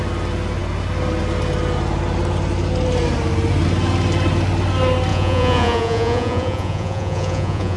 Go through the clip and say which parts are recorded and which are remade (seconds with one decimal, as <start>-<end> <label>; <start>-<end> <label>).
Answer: 0.0-5.1 recorded; 5.1-7.8 remade